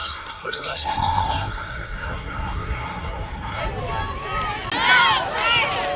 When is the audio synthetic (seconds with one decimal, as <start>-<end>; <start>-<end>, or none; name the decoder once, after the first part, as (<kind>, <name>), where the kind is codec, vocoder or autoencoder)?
0.0-3.6 (codec, SNAC)